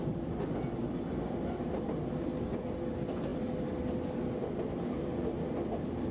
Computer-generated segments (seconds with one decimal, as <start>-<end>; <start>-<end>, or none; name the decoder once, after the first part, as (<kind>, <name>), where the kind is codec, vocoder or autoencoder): none